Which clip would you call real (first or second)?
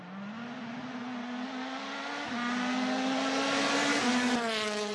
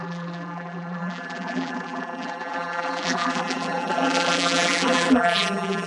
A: first